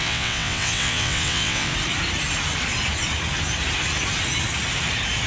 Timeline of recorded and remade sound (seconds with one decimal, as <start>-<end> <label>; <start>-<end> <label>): 0.0-1.7 remade; 1.7-5.3 recorded